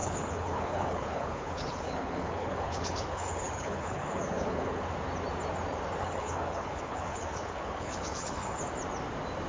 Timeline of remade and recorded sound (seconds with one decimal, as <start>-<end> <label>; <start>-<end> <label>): 0.0-4.9 remade; 4.9-6.0 recorded; 6.0-8.6 remade; 8.6-9.5 recorded